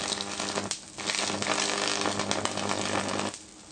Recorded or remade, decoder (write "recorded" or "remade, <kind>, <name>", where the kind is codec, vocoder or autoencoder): recorded